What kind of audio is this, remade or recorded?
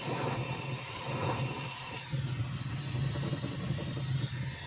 recorded